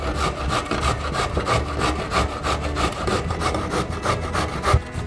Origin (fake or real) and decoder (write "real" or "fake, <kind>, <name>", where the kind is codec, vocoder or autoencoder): real